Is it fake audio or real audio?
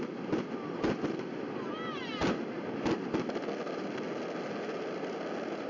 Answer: real